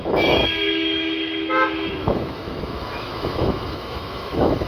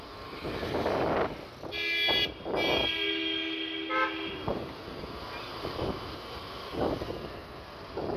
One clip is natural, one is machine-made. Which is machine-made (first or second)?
first